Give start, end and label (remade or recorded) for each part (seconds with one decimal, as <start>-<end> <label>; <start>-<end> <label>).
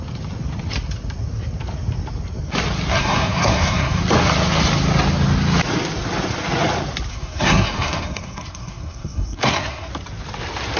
0.0-2.9 recorded; 2.9-4.0 remade; 4.0-7.1 recorded; 7.1-9.9 remade; 9.9-10.8 recorded